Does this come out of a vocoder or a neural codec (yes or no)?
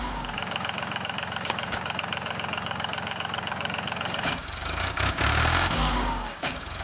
yes